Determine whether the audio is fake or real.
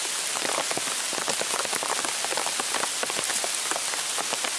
real